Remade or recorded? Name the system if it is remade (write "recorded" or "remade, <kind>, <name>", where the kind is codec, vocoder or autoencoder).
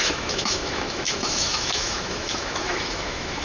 remade, autoencoder, DAC-VAE